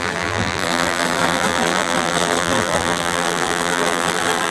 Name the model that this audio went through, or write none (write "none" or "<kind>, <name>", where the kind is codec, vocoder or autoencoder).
vocoder, BigVGAN v2